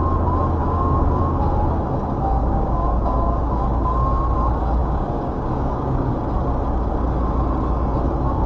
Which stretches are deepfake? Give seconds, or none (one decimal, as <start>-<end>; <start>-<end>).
0.6-1.2; 2.4-3.4; 4.8-6.1